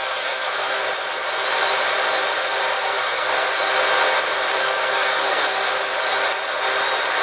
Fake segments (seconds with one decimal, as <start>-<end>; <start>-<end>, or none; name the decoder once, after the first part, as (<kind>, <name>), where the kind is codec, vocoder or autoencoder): 0.0-0.8 (codec, SNAC); 2.7-3.5; 4.6-5.7